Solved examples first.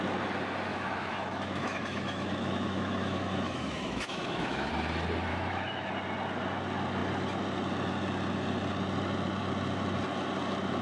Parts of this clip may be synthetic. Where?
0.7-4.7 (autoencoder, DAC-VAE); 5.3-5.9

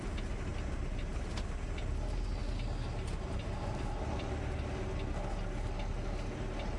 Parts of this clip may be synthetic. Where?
none

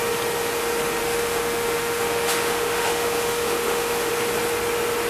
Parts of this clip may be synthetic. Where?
1.0-4.1 (autoencoder, DAC-VAE)

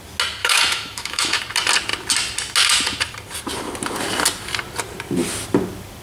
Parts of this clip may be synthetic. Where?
0.4-1.4 (autoencoder, DAC-VAE)

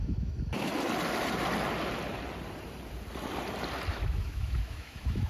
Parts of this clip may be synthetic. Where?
0.0-0.7 (autoencoder, DAC-VAE); 3.9-5.3

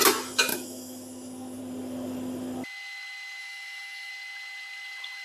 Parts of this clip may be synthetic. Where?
0.5-1.6 (autoencoder, DAC-VAE); 3.4-4.1